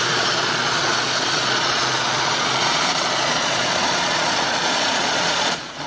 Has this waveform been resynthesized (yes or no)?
yes